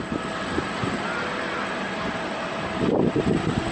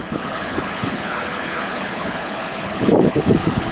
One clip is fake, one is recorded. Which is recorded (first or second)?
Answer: first